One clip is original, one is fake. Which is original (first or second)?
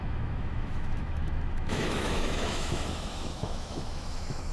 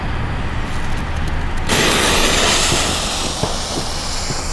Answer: second